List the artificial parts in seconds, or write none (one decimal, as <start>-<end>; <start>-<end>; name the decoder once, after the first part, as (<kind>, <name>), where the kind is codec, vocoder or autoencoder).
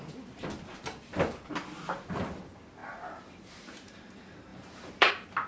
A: 2.8-4.0 (vocoder, BigVGAN v2); 4.5-5.1